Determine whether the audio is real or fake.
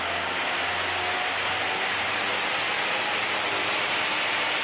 real